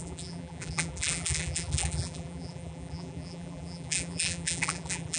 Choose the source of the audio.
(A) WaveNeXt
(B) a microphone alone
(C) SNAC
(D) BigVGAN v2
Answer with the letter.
D